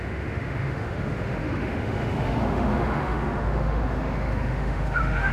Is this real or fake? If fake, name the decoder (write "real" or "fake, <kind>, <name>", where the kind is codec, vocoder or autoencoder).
fake, autoencoder, DAC-VAE